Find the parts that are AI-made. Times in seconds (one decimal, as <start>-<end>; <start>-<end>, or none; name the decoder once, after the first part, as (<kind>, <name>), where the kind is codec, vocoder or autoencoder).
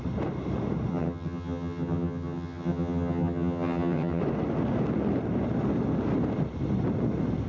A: 0.9-4.2 (vocoder, HiFi-GAN)